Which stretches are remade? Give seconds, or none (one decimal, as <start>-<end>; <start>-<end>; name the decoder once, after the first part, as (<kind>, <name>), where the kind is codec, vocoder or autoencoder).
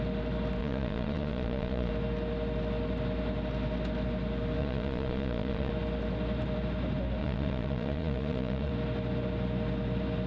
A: 0.6-1.9 (vocoder, Vocos); 4.6-5.7; 7.2-8.7